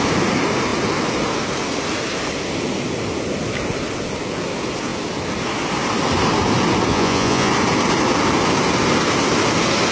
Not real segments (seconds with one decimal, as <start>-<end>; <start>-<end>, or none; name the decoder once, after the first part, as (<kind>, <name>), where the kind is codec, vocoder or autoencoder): 6.9-7.5 (vocoder, Vocos)